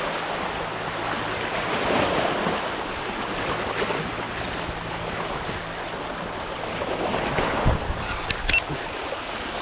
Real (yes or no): yes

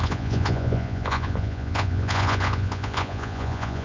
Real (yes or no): no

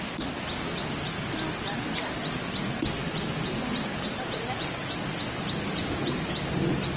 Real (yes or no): yes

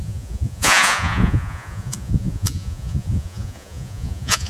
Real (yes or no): no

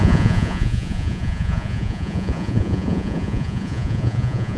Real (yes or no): no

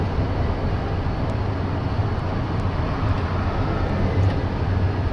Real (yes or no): yes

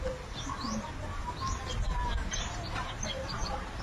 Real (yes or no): yes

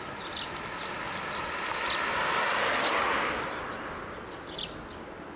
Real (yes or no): yes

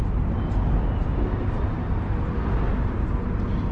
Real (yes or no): yes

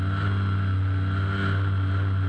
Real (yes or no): yes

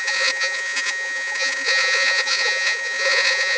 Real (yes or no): no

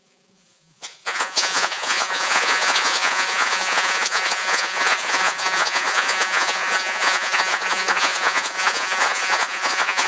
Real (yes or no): no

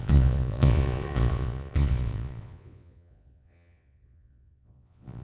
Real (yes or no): no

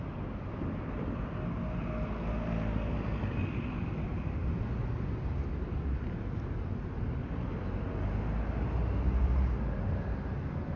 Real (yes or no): yes